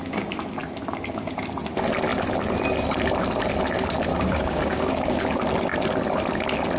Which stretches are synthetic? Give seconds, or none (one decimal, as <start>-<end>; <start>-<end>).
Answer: 4.1-5.2